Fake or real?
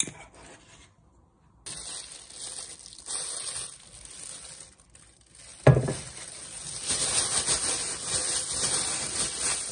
real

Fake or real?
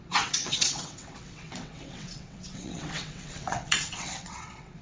fake